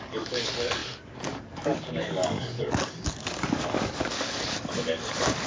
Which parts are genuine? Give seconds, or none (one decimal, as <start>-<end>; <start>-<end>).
none